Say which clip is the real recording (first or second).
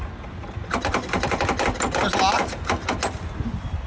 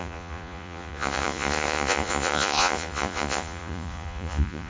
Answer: first